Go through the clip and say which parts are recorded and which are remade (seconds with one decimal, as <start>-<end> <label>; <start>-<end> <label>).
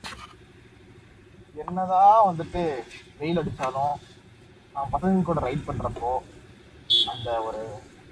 0.0-2.5 recorded; 2.5-3.0 remade; 3.0-3.9 recorded; 3.9-5.0 remade; 5.0-8.1 recorded